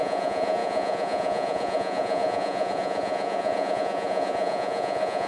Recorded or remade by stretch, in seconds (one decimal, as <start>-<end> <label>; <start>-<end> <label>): 0.0-5.3 remade